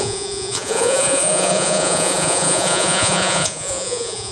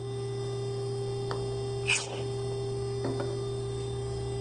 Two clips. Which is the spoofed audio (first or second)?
first